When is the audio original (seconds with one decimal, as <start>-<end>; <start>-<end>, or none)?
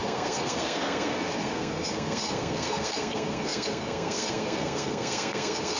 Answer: none